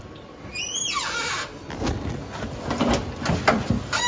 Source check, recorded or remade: recorded